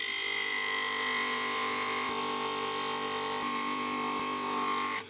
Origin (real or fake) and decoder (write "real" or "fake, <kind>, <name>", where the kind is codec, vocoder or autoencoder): fake, vocoder, BigVGAN v2